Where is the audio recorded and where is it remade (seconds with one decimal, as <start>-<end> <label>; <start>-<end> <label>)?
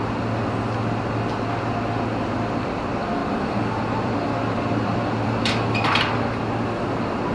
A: 0.0-3.2 recorded; 3.2-6.4 remade; 6.4-7.3 recorded